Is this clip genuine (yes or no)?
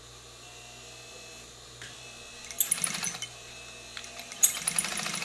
yes